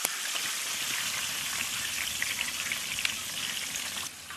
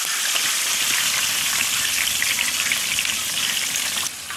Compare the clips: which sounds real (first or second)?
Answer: first